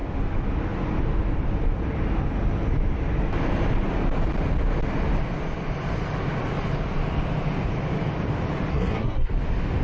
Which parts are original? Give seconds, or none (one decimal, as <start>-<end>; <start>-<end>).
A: 0.0-8.7; 9.3-9.8